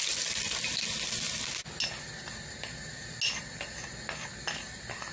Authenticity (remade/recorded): recorded